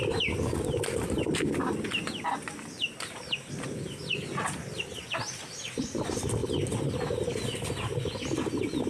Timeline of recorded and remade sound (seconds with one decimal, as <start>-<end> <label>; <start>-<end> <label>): 0.0-8.9 recorded